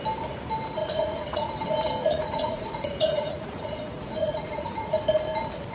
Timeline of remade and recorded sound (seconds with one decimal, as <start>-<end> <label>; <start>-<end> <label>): 0.0-0.8 recorded; 0.8-1.5 remade; 1.5-2.0 recorded; 2.0-5.0 remade; 5.0-5.7 recorded